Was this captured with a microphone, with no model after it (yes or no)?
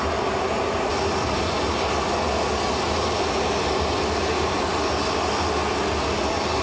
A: yes